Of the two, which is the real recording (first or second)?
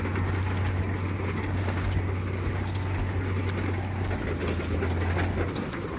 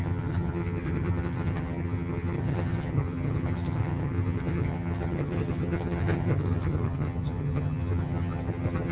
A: first